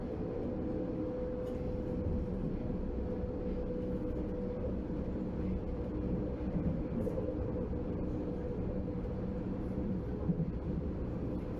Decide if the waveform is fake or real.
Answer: real